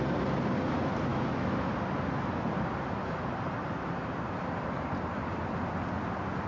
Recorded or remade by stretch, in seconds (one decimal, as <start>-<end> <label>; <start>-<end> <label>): 0.0-1.1 recorded; 1.1-1.7 remade; 1.7-6.5 recorded